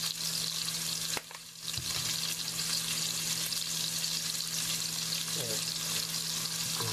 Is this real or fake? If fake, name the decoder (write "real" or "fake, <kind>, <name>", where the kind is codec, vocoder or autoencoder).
real